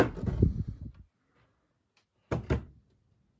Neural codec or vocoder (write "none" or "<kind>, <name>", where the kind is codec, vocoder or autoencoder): none